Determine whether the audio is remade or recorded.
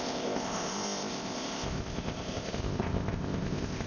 remade